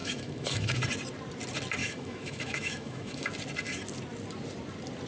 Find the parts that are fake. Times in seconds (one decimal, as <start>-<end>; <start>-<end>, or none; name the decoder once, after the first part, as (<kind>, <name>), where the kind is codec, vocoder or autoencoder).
0.0-0.8 (autoencoder, DAC-VAE); 1.8-3.3